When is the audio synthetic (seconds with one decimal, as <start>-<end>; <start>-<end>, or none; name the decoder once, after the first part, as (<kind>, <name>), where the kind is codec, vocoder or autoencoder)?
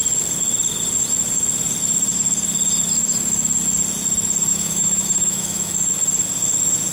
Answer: 4.5-5.9 (autoencoder, DAC-VAE)